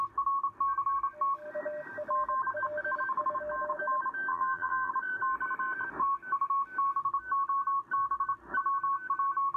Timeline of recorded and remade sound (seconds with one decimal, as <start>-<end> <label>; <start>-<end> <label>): 0.0-4.3 recorded; 4.3-4.9 remade; 4.9-9.6 recorded